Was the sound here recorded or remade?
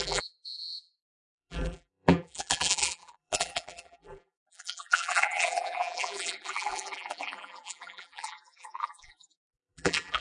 remade